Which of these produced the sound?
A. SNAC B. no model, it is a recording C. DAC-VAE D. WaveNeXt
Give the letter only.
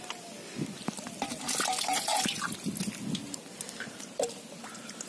B